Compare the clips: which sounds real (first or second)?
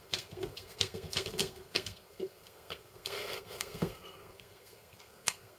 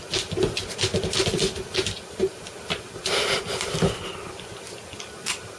second